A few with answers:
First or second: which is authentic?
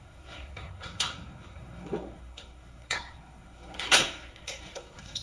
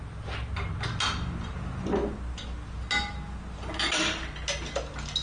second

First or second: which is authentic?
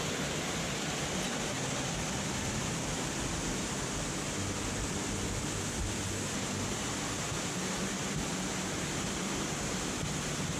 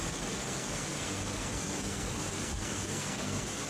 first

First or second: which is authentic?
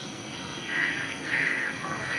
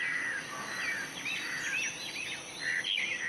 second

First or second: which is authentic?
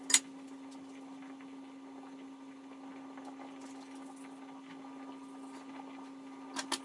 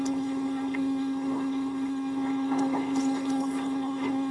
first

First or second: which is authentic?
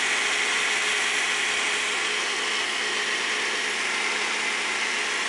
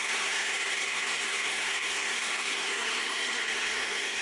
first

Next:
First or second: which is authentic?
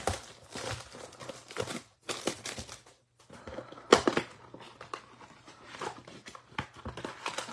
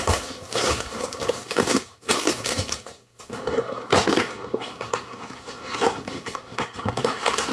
first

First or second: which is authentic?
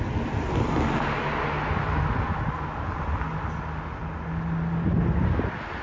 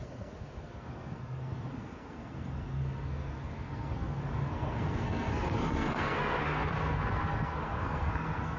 first